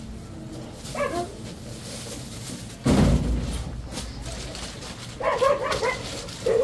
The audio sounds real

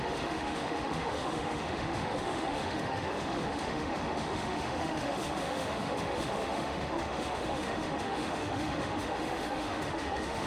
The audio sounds fake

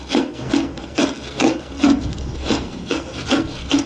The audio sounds fake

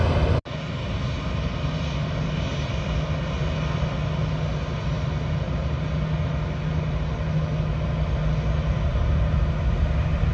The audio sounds real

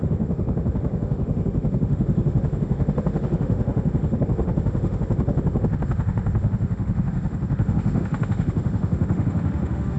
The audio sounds fake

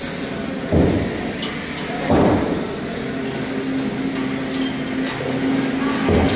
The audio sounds real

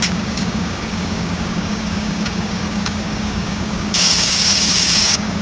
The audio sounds fake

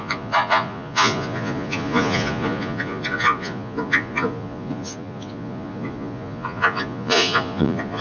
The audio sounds fake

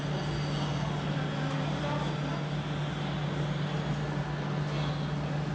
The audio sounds real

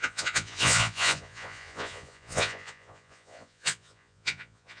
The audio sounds fake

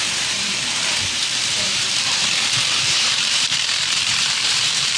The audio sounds fake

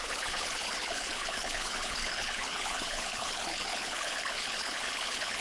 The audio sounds fake